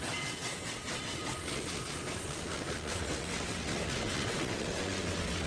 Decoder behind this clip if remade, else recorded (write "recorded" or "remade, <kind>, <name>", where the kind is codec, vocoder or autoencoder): remade, vocoder, WaveNeXt